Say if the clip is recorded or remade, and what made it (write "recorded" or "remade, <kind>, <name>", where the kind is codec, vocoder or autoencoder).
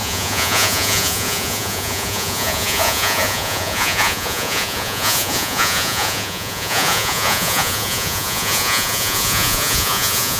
remade, vocoder, Vocos